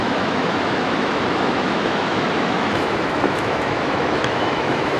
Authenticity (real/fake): fake